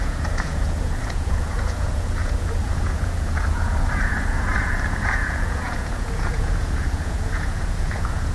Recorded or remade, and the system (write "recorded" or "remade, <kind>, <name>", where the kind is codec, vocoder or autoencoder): remade, vocoder, Vocos